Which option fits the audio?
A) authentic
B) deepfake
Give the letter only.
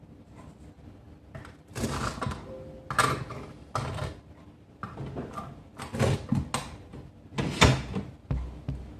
A